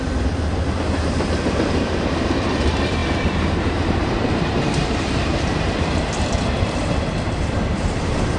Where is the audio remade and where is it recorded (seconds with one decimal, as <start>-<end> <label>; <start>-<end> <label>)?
0.0-8.4 remade